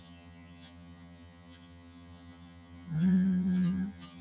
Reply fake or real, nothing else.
fake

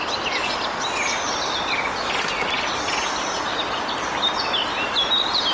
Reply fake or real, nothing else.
real